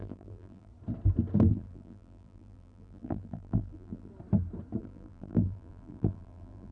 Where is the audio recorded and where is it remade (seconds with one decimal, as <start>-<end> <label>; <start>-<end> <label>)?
0.0-0.7 remade; 0.7-1.5 recorded; 1.5-4.1 remade; 4.1-4.8 recorded; 4.8-6.7 remade